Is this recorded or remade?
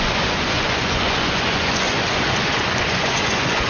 remade